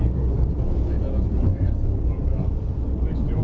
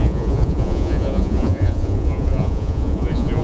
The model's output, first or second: second